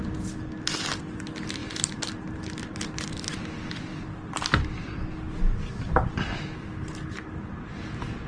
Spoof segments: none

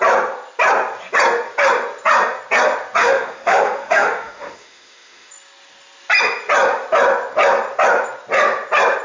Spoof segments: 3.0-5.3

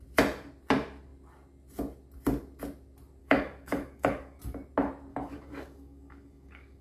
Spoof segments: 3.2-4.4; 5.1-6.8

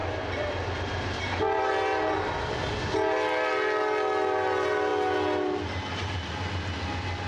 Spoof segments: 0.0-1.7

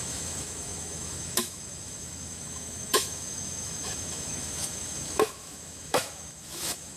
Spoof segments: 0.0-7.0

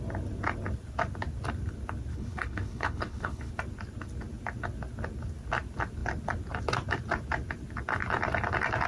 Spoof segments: 2.1-3.5

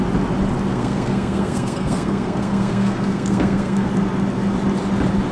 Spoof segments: 0.7-3.9

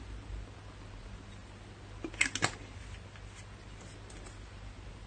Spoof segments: none